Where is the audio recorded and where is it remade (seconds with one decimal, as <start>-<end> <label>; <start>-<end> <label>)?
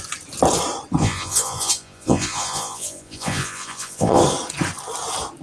0.0-1.0 recorded; 1.0-4.2 remade; 4.2-5.4 recorded